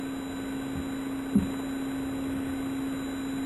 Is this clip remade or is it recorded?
recorded